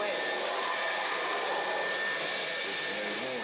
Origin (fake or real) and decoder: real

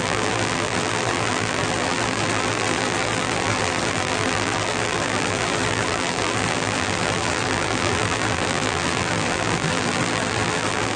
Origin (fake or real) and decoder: fake, vocoder, BigVGAN v2